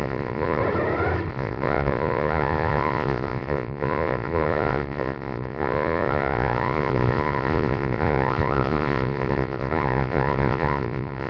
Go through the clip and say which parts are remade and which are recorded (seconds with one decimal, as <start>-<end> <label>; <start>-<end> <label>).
0.0-0.6 remade; 0.6-1.3 recorded; 1.3-11.3 remade